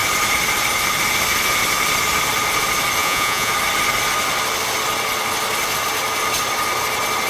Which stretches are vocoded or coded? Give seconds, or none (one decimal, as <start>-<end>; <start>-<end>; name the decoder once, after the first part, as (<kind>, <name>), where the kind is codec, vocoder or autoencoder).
3.0-3.5 (vocoder, Vocos)